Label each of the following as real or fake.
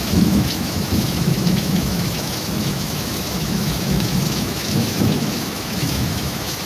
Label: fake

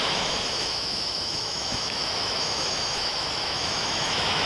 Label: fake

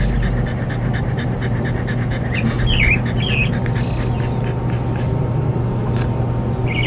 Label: real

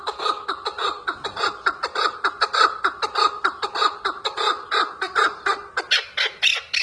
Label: real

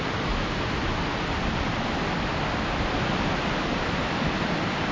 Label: real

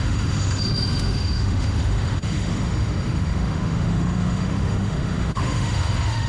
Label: fake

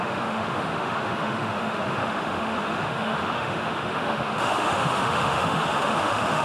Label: fake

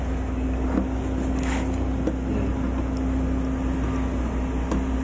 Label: real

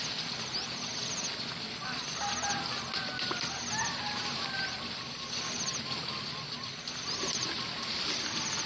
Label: real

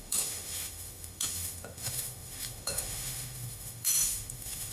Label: fake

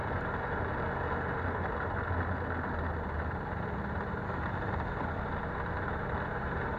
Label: real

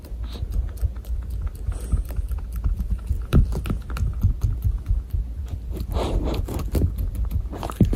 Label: real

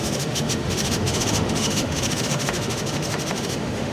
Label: fake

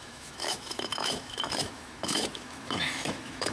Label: fake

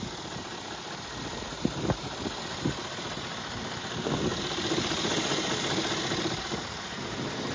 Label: real